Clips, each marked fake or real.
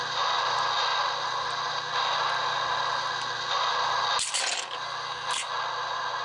real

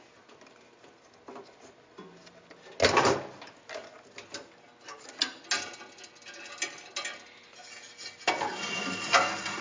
real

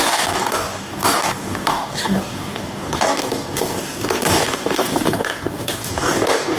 fake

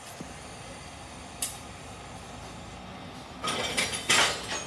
real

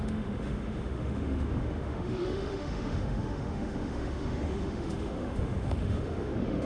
fake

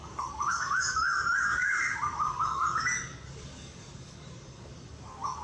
fake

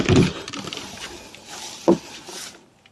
fake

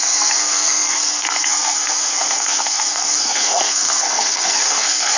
fake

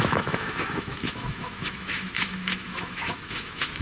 fake